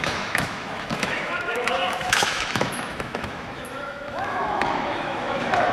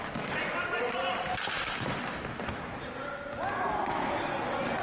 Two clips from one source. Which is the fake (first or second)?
first